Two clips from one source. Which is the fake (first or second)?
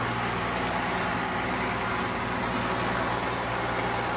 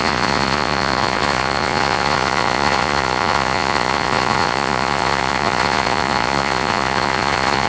second